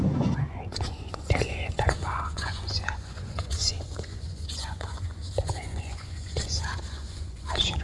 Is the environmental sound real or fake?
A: fake